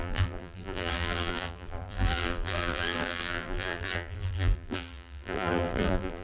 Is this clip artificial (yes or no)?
yes